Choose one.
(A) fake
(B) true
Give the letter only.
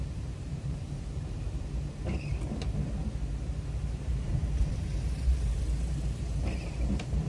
A